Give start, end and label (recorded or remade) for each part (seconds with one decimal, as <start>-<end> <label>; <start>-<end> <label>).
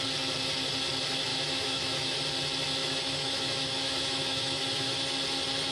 0.0-1.3 recorded; 1.3-2.2 remade; 2.2-2.8 recorded; 2.8-5.0 remade; 5.0-5.7 recorded